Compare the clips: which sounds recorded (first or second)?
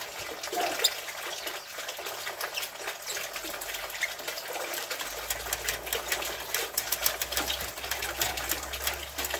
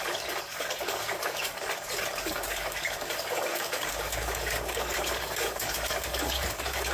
first